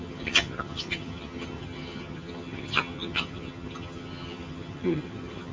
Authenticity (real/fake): fake